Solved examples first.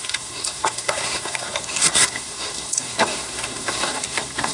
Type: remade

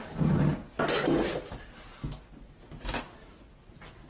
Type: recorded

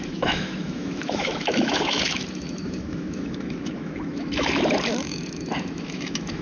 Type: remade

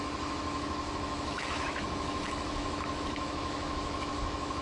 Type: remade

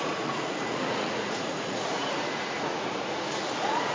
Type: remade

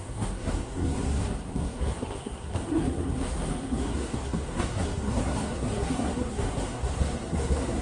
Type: remade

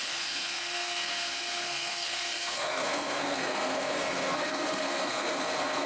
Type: remade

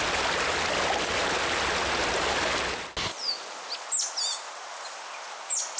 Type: recorded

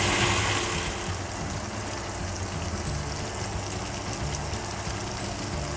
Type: recorded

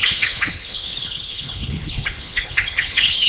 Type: remade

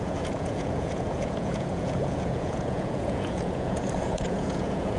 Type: remade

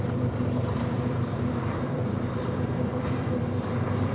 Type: remade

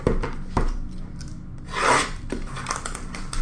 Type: recorded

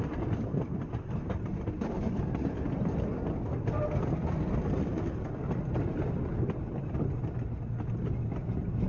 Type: recorded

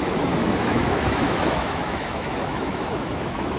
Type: remade